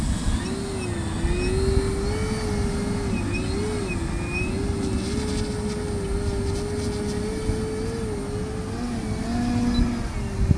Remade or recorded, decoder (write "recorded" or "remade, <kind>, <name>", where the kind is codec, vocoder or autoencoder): recorded